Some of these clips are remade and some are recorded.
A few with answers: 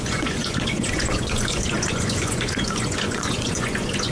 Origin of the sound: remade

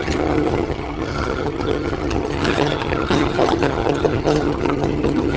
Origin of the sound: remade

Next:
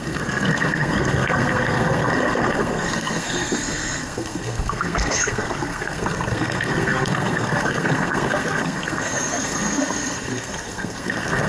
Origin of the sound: remade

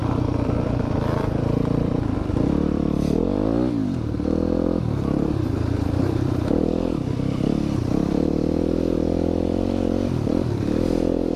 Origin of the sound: remade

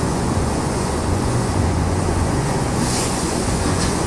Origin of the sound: remade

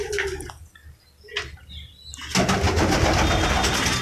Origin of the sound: recorded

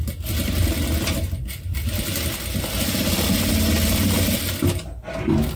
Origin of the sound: recorded